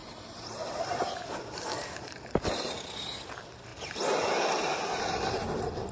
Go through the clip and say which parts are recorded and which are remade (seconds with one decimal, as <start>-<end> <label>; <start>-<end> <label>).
0.0-2.1 remade; 2.1-5.9 recorded